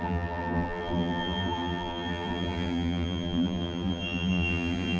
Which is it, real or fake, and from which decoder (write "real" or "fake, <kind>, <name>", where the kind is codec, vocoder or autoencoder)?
fake, vocoder, BigVGAN v2